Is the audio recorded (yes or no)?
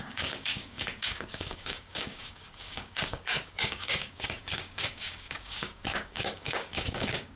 no